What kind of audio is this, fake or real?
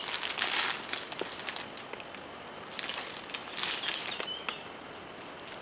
real